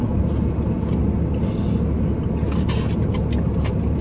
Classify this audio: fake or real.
real